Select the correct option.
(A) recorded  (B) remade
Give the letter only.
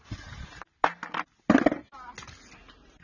A